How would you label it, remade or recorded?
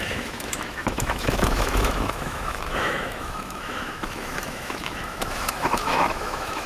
remade